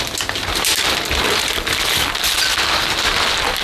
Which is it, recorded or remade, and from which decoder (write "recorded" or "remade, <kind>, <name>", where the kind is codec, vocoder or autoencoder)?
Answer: recorded